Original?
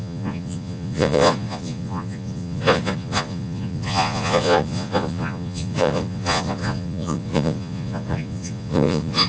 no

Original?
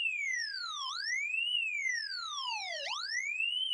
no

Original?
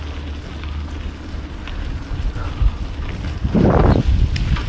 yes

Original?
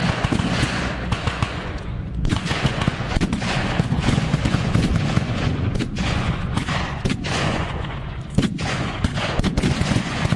no